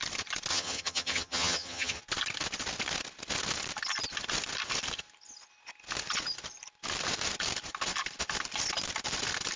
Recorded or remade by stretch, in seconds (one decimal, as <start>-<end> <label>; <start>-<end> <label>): 0.0-0.5 recorded; 0.5-2.0 remade; 2.0-9.6 recorded